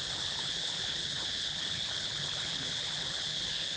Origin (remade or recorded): remade